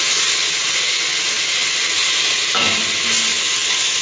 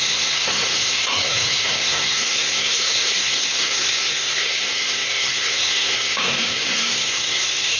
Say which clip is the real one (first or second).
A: first